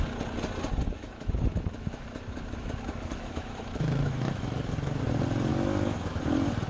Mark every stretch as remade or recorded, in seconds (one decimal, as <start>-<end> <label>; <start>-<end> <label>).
0.0-1.0 recorded; 1.0-5.0 remade; 5.0-5.5 recorded; 5.5-6.2 remade; 6.2-6.7 recorded